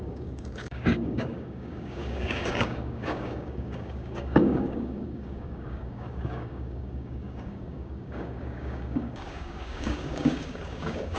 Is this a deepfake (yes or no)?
yes